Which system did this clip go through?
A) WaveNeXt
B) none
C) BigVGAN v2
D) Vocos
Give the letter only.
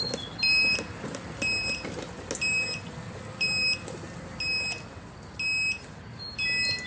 B